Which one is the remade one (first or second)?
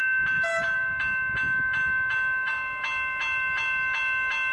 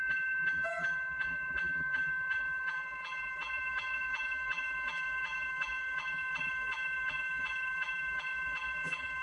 second